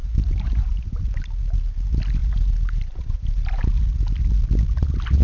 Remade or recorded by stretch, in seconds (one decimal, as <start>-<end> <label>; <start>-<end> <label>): 0.0-1.0 remade; 1.0-2.2 recorded; 2.2-3.7 remade; 3.7-5.2 recorded